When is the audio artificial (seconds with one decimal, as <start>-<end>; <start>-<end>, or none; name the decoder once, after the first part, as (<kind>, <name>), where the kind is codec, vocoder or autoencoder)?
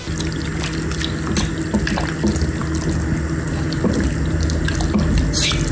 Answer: none